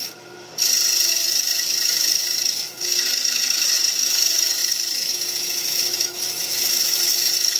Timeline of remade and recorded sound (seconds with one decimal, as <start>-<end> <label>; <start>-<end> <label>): 0.0-0.5 remade; 0.5-1.1 recorded; 1.1-7.6 remade